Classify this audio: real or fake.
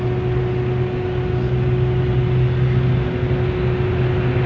real